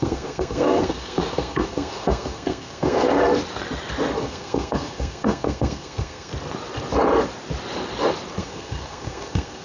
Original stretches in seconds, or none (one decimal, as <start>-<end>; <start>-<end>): 3.2-4.2; 6.3-8.4